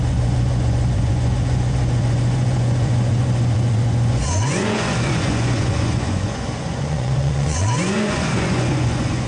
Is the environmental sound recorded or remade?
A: remade